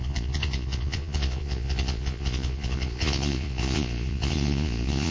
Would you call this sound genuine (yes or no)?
no